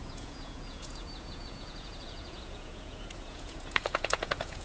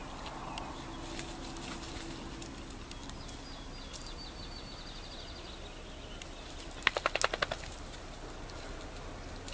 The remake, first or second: first